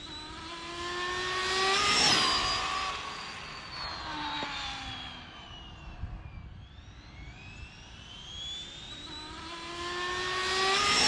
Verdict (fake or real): real